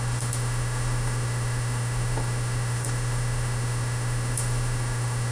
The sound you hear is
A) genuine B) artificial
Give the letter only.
B